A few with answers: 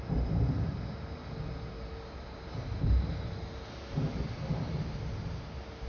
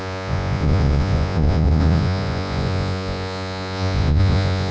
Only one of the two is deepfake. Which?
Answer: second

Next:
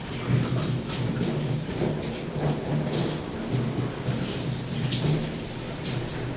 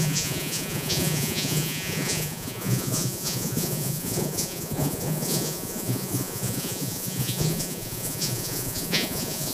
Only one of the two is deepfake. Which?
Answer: second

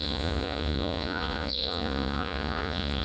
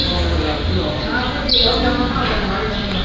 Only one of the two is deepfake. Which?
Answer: first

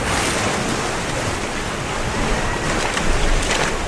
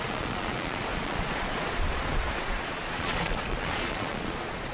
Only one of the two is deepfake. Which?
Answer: second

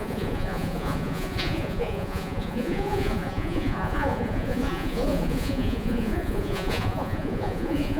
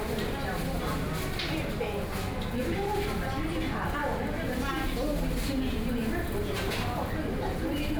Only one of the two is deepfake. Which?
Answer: first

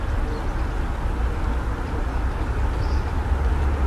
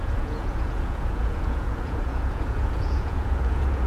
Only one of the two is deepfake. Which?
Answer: second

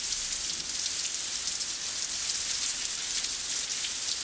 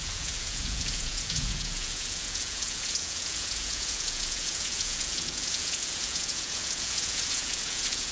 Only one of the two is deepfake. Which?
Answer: second